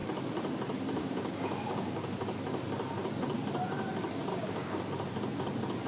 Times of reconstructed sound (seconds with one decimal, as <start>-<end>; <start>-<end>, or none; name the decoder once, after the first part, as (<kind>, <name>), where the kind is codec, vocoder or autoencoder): 1.0-2.2 (codec, DAC); 4.3-4.8